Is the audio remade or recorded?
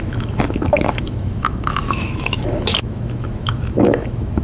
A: remade